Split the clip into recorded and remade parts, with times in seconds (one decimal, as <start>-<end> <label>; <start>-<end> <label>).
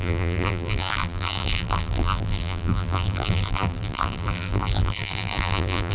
0.0-5.9 remade